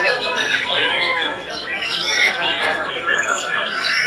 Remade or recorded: remade